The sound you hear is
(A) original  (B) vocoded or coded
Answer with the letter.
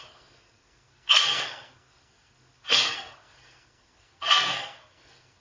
B